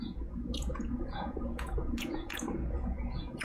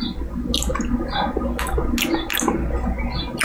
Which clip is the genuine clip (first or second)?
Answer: second